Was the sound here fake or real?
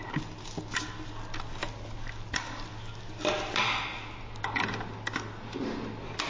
real